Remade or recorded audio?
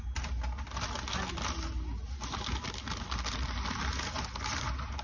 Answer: recorded